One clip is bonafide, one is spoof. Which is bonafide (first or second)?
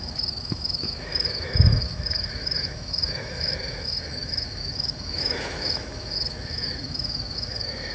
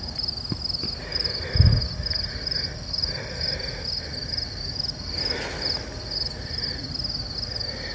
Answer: second